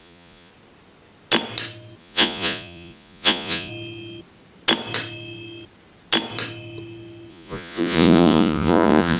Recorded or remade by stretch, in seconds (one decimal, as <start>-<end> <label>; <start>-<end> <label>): 0.0-0.5 remade; 0.5-2.0 recorded; 2.0-3.7 remade; 3.7-7.3 recorded; 7.3-9.2 remade